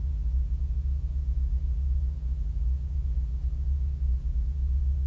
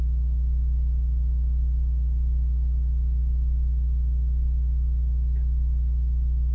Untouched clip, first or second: second